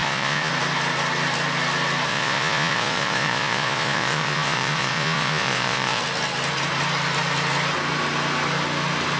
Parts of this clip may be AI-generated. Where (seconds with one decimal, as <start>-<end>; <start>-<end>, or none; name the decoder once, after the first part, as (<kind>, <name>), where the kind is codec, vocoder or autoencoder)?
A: 0.0-0.5 (vocoder, Vocos); 2.1-6.0